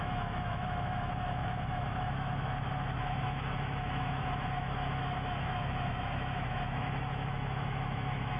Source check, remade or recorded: remade